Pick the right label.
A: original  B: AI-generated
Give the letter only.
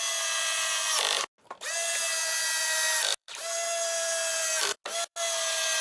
A